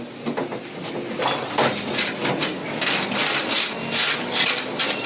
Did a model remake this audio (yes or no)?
no